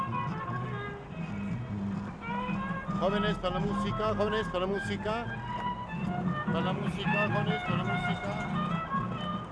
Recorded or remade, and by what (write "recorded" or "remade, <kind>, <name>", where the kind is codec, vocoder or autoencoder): recorded